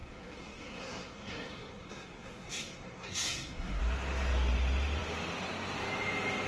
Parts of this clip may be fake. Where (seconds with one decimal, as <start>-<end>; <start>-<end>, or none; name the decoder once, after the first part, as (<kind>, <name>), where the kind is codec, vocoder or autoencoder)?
0.0-3.8 (codec, SNAC)